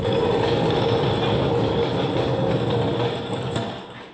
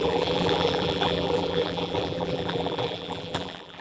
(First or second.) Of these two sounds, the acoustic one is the first